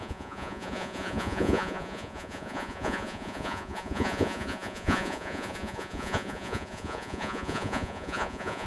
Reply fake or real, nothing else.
fake